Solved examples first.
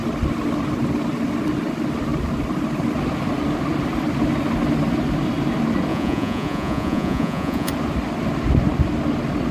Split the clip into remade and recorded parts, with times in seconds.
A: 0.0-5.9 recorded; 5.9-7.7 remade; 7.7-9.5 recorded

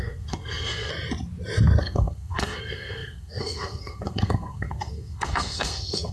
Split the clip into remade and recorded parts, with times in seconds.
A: 0.0-0.9 remade; 0.9-1.8 recorded; 1.8-6.1 remade

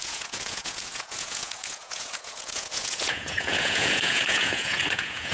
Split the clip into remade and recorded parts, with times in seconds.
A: 0.0-5.3 remade

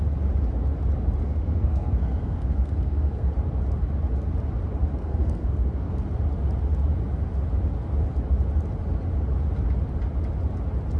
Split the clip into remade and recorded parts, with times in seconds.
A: 0.0-1.2 recorded; 1.2-3.3 remade; 3.3-5.0 recorded; 5.0-6.0 remade; 6.0-11.0 recorded

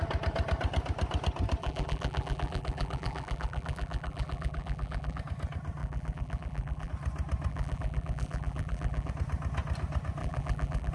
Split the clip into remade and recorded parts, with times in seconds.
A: 0.0-1.6 recorded; 1.6-5.2 remade; 5.2-5.8 recorded; 5.8-6.9 remade; 6.9-7.5 recorded; 7.5-9.1 remade; 9.1-10.2 recorded; 10.2-10.9 remade

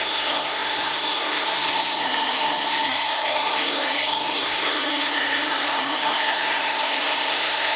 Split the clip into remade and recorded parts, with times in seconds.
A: 0.0-7.8 remade